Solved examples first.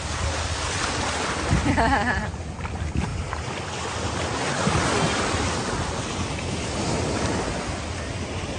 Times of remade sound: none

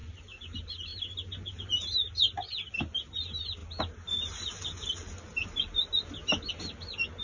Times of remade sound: none

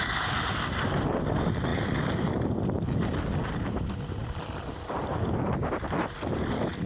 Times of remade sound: 1.7-2.5 (vocoder, BigVGAN v2); 4.2-6.9

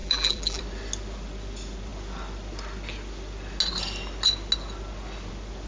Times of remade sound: 0.0-0.6 (vocoder, BigVGAN v2)